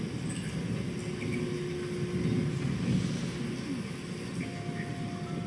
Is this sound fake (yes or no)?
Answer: no